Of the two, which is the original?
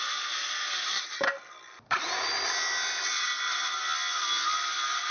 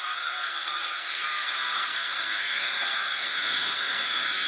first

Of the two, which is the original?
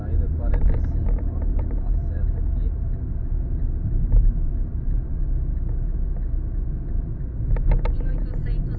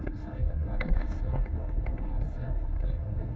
first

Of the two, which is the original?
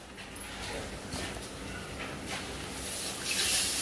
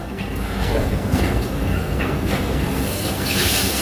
first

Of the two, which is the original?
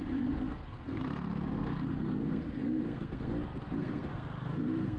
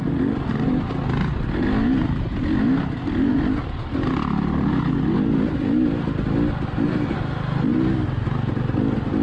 second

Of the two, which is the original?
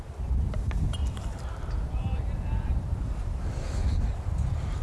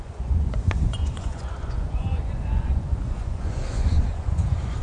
first